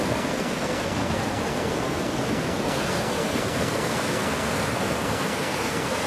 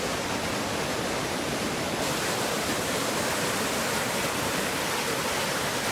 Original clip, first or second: second